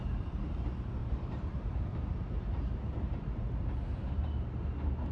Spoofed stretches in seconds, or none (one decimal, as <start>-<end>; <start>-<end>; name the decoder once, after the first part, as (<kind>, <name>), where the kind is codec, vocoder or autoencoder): 1.0-4.1 (vocoder, BigVGAN v2)